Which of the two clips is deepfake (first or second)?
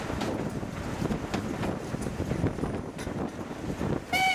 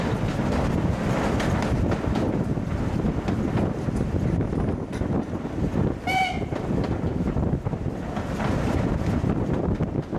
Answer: second